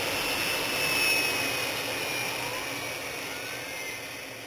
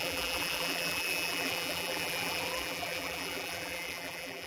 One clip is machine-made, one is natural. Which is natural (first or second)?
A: first